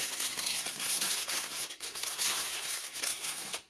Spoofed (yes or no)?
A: yes